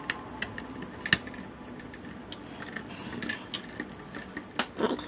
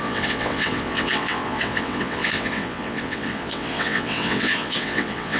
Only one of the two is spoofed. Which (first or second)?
second